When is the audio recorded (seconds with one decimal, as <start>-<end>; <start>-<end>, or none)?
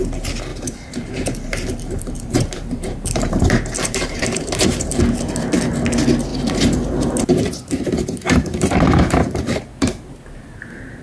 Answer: 0.0-0.5; 5.0-6.3; 7.4-8.0; 9.6-11.0